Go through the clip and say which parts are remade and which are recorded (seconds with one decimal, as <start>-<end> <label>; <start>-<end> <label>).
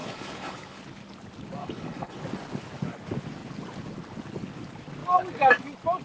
0.0-0.8 remade; 0.8-1.6 recorded; 1.6-2.2 remade; 2.2-6.0 recorded